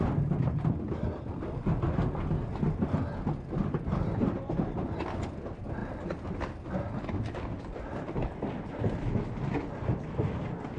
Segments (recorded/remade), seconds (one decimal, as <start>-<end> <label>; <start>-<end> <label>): 0.0-10.8 recorded